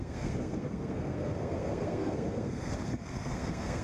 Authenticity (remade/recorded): remade